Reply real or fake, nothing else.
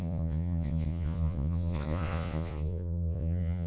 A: fake